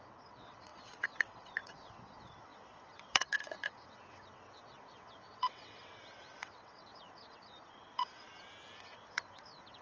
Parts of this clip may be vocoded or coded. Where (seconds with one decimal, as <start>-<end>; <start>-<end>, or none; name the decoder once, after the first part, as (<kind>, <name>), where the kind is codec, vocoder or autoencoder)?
0.0-8.3 (vocoder, WaveNeXt); 8.8-9.8